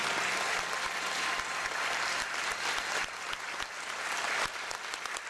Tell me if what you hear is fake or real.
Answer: real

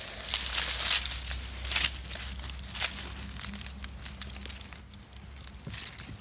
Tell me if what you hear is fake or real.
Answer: real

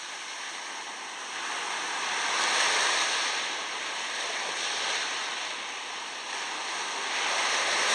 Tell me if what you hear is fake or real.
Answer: real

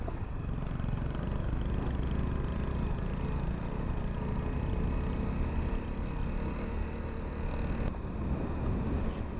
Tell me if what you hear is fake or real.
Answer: real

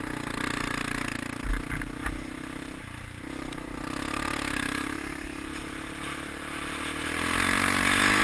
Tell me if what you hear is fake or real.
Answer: real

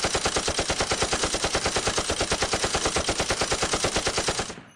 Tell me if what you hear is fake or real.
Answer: real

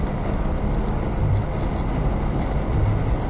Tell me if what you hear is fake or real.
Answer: real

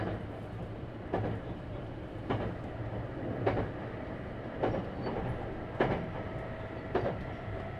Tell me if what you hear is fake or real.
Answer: real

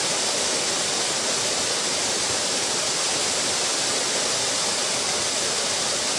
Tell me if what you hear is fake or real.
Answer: fake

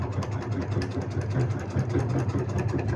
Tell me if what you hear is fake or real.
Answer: fake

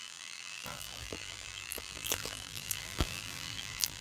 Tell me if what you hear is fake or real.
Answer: fake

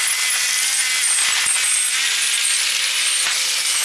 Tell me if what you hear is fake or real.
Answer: real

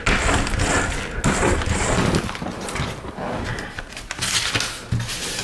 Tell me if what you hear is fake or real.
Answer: real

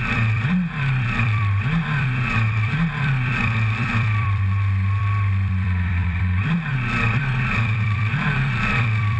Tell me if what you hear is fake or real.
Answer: fake